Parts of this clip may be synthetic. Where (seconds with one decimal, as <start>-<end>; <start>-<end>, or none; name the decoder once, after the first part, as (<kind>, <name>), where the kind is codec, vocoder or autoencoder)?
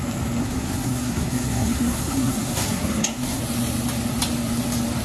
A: 0.4-3.4 (codec, SNAC)